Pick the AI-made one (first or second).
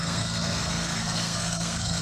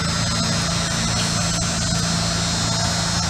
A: first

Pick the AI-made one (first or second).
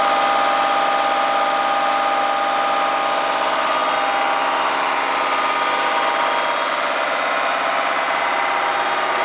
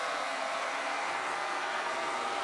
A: second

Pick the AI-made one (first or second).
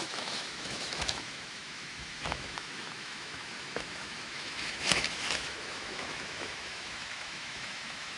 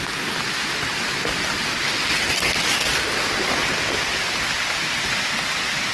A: first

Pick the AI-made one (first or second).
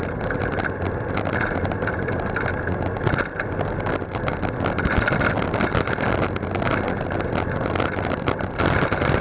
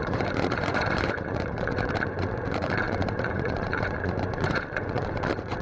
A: second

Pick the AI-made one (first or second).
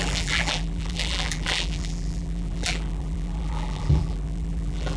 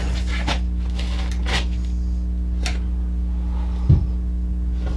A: first